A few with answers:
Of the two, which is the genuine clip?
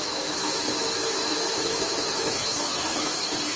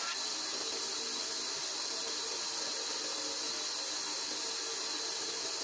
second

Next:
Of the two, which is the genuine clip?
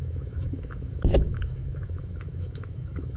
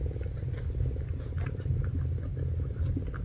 second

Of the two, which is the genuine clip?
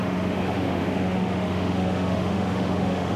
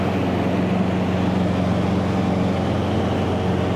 second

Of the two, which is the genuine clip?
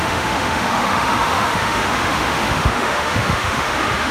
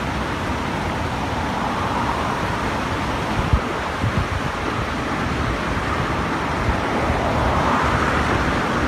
second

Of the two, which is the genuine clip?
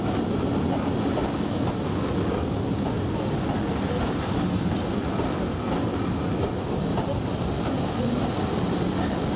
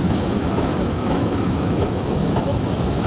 first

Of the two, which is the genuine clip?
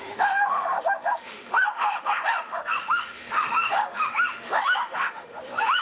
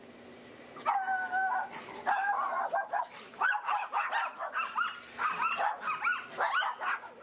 second